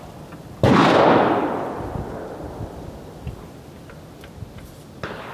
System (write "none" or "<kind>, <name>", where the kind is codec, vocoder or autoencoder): none